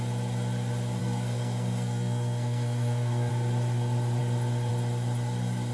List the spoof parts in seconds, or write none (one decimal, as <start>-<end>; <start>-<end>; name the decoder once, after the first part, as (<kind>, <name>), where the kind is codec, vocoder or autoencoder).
1.0-3.3 (codec, SNAC)